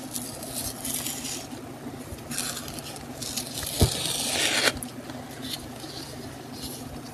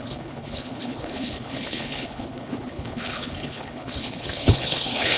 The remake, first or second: second